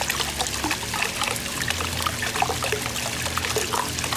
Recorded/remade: recorded